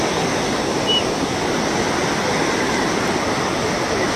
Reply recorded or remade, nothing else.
recorded